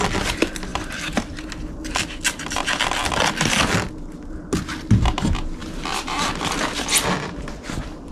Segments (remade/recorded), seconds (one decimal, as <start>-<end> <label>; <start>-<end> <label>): 0.0-8.1 recorded